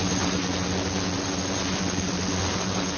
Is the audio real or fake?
real